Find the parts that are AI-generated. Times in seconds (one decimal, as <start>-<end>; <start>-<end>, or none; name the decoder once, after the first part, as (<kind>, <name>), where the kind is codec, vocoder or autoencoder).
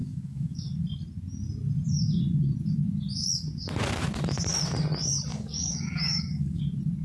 0.0-0.7 (codec, DAC); 5.3-6.6